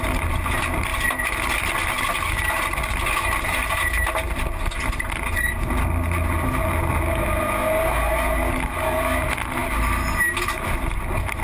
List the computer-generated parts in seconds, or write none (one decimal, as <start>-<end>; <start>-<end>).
none